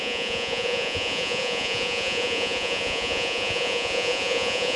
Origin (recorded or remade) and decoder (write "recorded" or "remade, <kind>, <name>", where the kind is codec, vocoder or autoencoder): remade, vocoder, Vocos